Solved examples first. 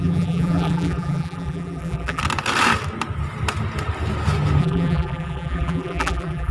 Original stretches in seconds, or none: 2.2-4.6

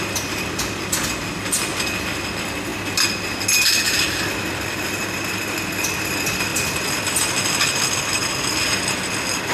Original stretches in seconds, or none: 0.0-9.5

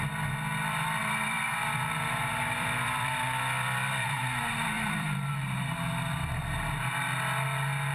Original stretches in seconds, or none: 0.0-1.0; 1.5-2.2; 5.9-7.9

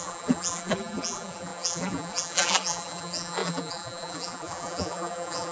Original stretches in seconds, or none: none

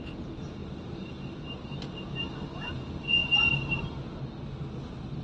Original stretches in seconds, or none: 0.0-0.6; 1.2-2.0; 2.7-3.2; 4.2-5.2